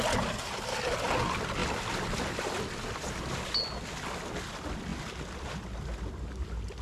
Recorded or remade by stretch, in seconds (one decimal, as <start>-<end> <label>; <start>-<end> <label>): 0.0-6.8 recorded